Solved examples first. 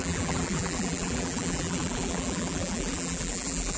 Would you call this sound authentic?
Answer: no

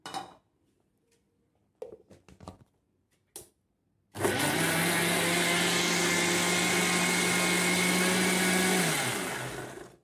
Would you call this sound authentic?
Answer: yes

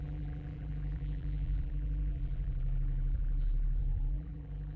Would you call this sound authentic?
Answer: no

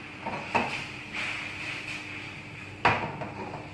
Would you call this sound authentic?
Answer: yes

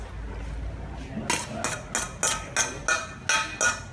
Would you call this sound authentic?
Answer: yes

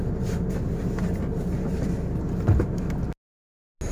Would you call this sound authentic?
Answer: yes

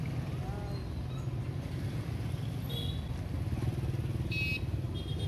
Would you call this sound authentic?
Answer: yes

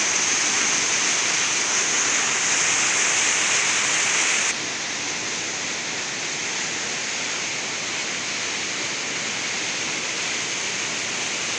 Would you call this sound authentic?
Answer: yes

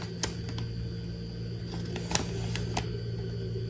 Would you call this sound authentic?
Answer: yes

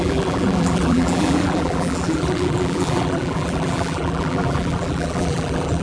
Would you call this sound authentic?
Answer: no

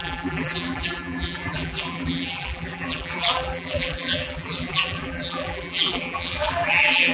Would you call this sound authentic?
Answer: no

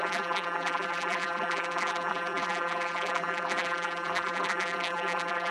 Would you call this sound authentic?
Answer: no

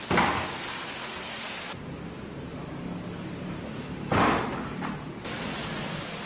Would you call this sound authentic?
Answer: yes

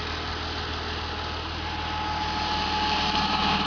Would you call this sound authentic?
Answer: yes